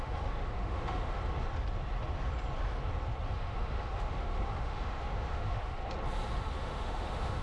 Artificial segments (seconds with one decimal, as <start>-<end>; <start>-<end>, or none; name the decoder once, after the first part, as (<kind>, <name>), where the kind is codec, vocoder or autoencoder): 0.0-1.2 (autoencoder, DAC-VAE); 3.3-5.8; 6.5-7.4